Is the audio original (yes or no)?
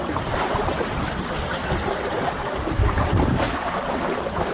yes